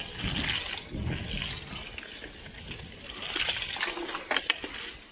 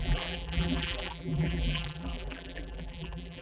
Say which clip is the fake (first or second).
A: second